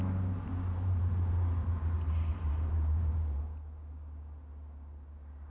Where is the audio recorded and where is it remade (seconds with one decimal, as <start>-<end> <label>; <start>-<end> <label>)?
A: 0.0-2.3 recorded; 2.3-3.4 remade; 3.4-5.5 recorded